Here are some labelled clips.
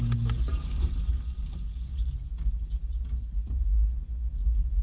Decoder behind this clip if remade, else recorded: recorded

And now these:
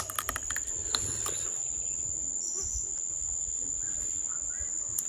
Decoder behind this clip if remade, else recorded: remade, vocoder, BigVGAN v2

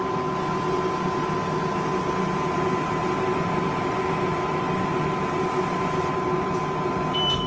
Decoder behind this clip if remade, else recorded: recorded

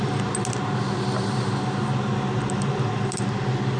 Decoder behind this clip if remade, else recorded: recorded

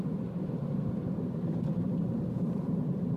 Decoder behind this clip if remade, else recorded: recorded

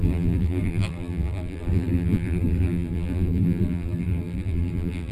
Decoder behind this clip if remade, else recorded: remade, vocoder, BigVGAN v2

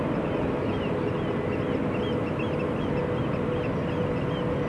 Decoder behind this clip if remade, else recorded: recorded